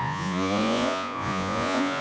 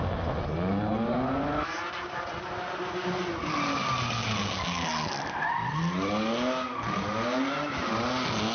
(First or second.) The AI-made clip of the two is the first